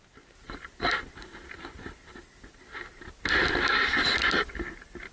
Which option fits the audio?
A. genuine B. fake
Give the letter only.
A